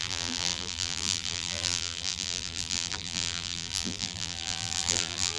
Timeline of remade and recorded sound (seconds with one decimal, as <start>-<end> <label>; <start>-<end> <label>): 0.0-5.4 remade